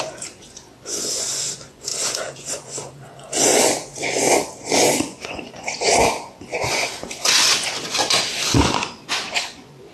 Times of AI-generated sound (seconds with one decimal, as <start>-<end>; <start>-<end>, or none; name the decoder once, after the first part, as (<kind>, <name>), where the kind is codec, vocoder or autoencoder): 0.0-9.9 (vocoder, Vocos)

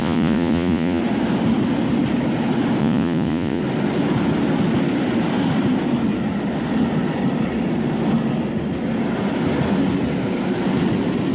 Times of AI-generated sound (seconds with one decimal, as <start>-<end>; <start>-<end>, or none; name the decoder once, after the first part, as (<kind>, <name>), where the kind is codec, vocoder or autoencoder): 0.0-1.0 (vocoder, Vocos); 2.8-3.6

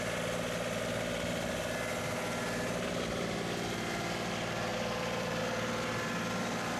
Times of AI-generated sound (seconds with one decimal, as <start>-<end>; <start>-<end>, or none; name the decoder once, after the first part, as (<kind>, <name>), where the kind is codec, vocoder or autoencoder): 4.7-5.4 (vocoder, BigVGAN v2)